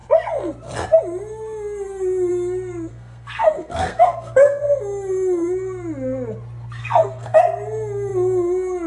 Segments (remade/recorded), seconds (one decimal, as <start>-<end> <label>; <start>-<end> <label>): 0.0-2.9 recorded; 2.9-4.6 remade; 4.6-6.8 recorded; 6.8-7.4 remade; 7.4-8.9 recorded